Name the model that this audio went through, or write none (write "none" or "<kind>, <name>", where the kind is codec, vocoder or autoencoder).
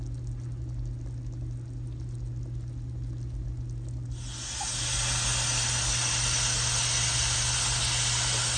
none